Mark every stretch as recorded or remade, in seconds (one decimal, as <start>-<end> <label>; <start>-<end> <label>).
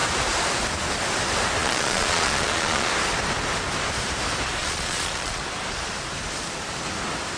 0.0-1.6 recorded; 1.6-2.9 remade; 2.9-4.6 recorded; 4.6-5.4 remade; 5.4-7.4 recorded